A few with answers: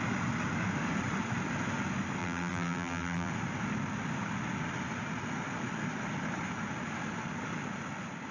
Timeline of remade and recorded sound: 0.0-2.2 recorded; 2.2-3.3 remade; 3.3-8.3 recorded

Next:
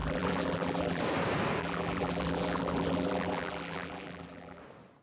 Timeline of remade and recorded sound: 0.0-1.0 remade; 1.0-1.6 recorded; 1.6-4.6 remade; 4.6-5.0 recorded